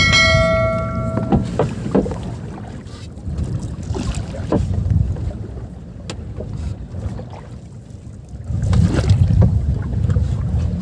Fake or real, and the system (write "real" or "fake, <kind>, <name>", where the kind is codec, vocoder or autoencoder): real